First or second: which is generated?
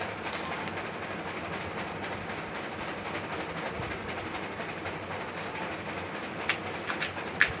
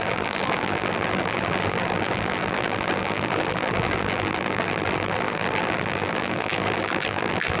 second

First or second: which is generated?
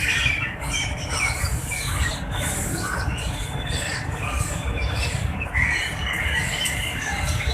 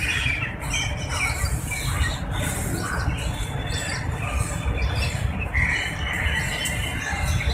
first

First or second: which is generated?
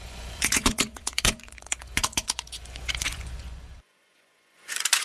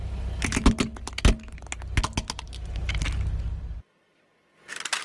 first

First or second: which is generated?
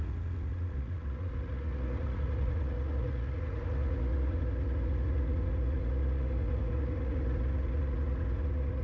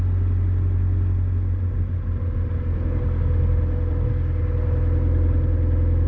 first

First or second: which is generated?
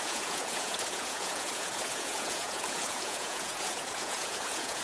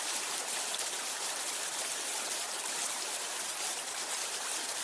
first